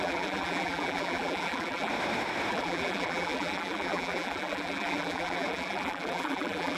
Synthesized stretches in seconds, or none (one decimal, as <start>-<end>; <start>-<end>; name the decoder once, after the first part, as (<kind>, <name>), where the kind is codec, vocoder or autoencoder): 0.0-1.9 (vocoder, BigVGAN v2); 2.5-6.8